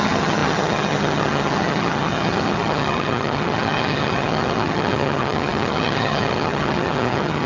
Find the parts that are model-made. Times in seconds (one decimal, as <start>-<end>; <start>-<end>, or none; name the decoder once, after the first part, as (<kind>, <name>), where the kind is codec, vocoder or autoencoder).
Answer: 0.0-7.5 (vocoder, HiFi-GAN)